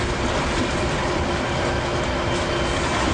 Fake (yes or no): no